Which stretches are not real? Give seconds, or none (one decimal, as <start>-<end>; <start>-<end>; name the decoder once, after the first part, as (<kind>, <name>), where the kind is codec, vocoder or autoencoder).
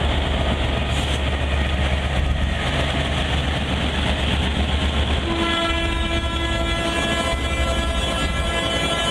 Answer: none